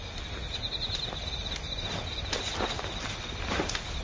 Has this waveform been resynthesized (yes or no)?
no